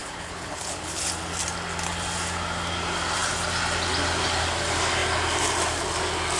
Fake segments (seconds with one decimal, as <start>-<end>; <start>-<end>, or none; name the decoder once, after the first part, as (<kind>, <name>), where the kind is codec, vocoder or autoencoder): 0.0-1.0 (codec, HILCodec)